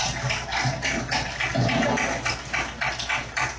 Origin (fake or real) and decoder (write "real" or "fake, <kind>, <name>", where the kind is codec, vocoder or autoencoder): real